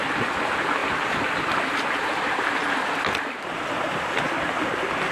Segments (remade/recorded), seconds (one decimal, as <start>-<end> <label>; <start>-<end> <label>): 0.0-5.1 recorded